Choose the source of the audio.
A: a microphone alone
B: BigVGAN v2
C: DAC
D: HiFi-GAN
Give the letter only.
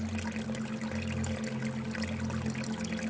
A